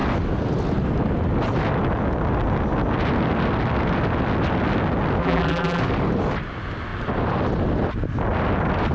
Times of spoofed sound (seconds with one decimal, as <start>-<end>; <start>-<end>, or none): 5.2-5.8